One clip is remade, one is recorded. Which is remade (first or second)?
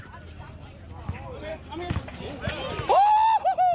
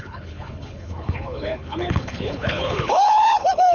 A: second